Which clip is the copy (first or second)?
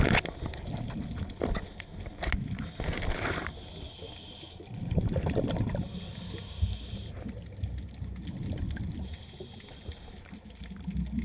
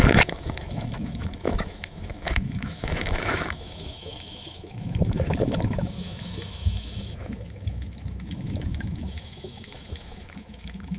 second